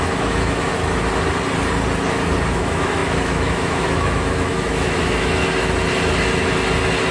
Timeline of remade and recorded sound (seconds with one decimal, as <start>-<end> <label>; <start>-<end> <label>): 0.0-0.7 remade; 0.7-2.5 recorded; 2.5-5.4 remade; 5.4-7.1 recorded